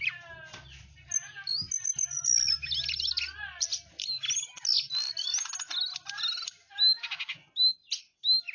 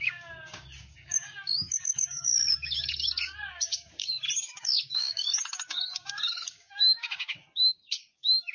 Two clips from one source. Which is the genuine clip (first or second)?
first